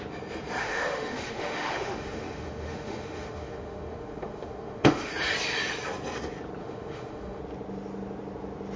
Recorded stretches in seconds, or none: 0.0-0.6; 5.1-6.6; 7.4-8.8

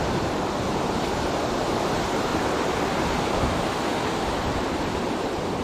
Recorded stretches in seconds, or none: none

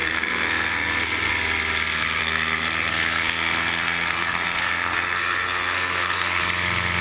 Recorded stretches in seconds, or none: 1.3-2.2; 6.4-7.0

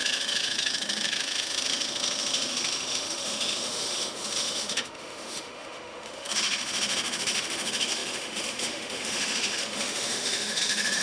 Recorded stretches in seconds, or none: none

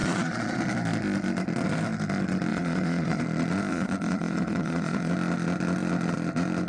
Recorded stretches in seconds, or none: 0.6-2.5; 3.2-3.7; 5.1-6.7

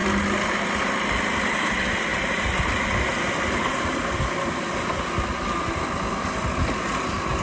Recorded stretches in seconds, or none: 0.0-7.4

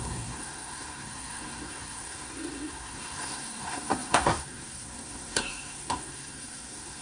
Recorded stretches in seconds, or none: none